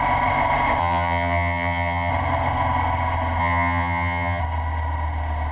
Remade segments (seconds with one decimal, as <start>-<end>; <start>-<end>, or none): 0.8-2.1; 3.4-4.4